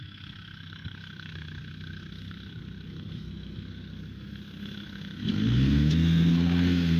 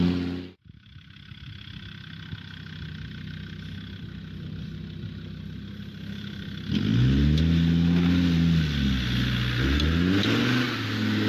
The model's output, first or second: first